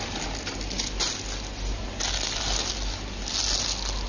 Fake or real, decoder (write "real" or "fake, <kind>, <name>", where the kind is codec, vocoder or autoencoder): real